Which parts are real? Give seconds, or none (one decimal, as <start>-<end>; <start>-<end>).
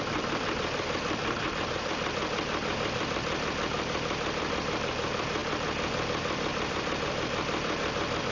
none